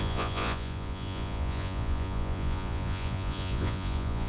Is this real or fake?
fake